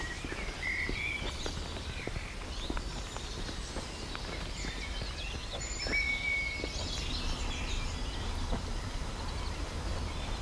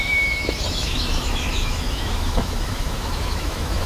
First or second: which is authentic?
first